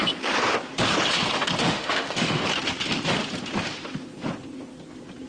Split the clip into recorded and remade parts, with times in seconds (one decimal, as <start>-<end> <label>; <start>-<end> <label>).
0.0-1.6 recorded; 1.6-2.4 remade; 2.4-5.3 recorded